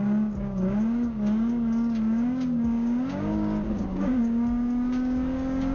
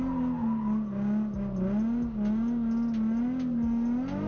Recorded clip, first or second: second